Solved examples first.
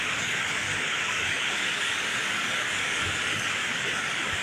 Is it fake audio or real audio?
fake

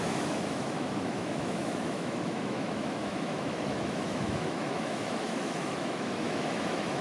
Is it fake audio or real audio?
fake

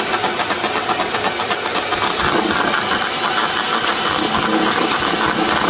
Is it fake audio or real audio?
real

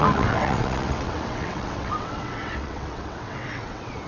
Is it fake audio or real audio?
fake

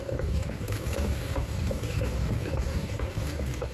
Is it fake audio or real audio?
fake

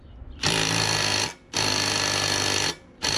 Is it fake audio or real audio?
real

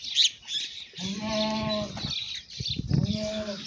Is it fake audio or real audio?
real